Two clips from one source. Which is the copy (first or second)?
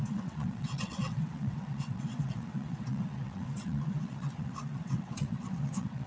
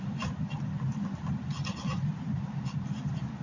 first